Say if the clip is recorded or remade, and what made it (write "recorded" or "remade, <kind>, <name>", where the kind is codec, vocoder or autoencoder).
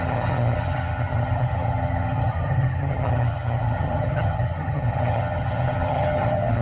remade, vocoder, HiFi-GAN